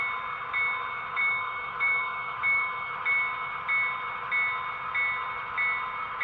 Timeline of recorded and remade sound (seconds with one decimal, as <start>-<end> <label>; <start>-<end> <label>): 0.0-1.2 recorded; 1.2-2.9 remade; 2.9-6.2 recorded